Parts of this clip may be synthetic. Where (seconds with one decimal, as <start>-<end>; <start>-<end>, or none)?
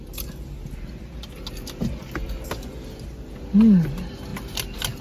none